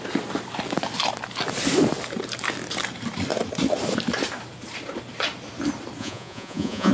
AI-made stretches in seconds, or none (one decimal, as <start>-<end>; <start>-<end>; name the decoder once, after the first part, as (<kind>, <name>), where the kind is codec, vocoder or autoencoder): 6.0-6.9 (vocoder, Vocos)